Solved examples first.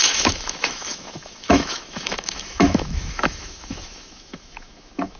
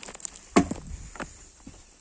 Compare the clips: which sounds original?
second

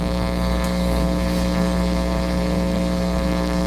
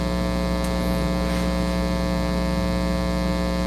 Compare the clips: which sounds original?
second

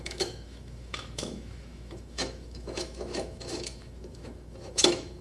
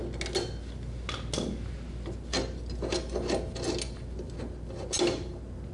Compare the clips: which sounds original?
second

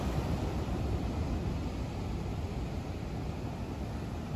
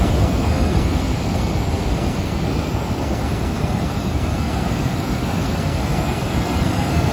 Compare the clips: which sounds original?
first